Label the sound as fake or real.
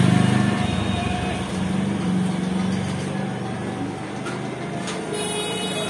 real